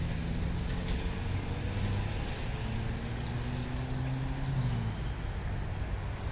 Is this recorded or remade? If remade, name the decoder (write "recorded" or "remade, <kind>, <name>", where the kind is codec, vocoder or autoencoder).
recorded